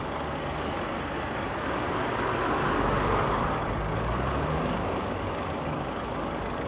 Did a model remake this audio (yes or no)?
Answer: yes